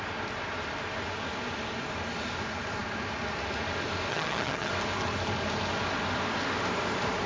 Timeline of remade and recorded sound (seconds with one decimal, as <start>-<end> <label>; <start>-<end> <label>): 0.0-4.1 recorded; 4.1-4.7 remade; 4.7-7.3 recorded